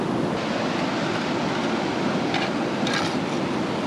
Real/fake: real